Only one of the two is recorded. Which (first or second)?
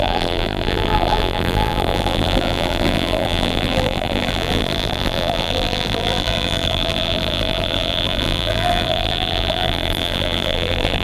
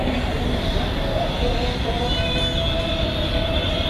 second